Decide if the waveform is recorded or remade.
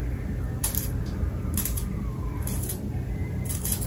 remade